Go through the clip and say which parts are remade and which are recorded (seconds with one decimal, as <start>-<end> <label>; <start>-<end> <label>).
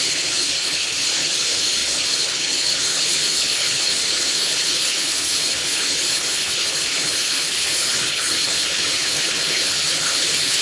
0.0-10.6 remade